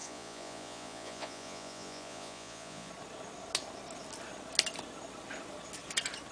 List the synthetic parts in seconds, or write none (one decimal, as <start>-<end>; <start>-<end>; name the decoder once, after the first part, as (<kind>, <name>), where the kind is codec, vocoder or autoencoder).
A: 0.0-2.9 (vocoder, Vocos)